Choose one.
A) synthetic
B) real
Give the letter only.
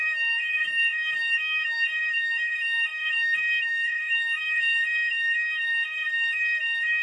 A